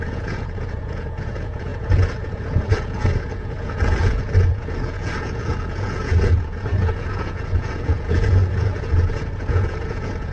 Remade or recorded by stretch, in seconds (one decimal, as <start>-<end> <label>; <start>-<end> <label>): 0.0-10.3 remade